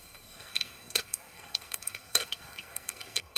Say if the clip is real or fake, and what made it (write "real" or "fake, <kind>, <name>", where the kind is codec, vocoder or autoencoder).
fake, codec, SNAC